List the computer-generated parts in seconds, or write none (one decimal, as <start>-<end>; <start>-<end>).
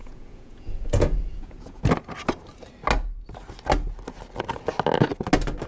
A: 0.0-1.8